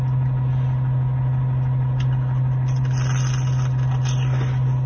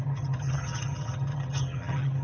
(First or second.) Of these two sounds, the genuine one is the first